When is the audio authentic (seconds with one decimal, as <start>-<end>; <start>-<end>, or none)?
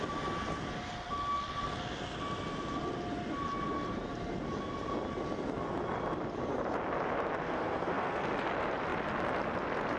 0.0-7.4; 8.3-10.0